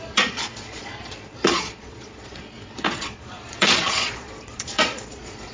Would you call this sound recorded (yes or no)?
no